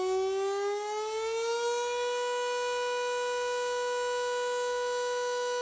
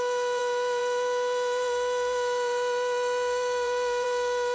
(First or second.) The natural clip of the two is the first